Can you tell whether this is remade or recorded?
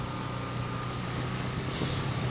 recorded